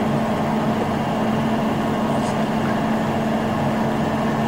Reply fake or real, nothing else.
real